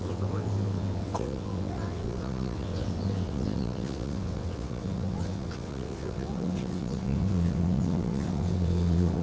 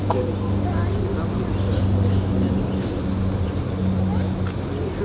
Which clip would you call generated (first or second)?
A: first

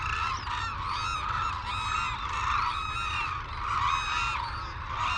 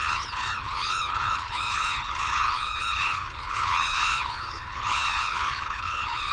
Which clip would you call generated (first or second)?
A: second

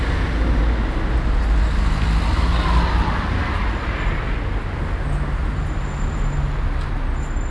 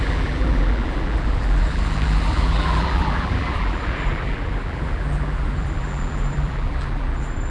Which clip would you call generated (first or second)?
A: second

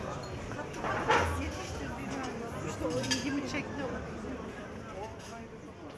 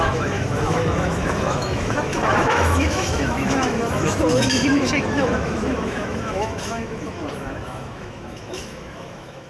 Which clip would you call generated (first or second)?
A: second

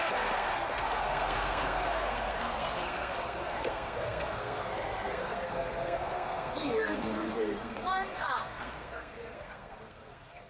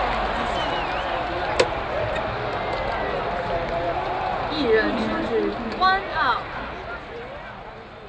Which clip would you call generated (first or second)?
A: first